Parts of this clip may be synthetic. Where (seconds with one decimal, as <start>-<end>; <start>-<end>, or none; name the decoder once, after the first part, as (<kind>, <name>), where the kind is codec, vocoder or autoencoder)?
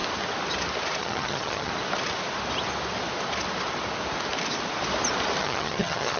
1.0-1.7 (vocoder, HiFi-GAN); 5.4-6.2